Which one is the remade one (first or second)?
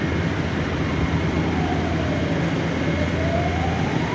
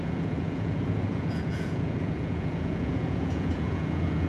second